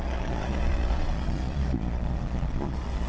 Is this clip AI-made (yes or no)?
yes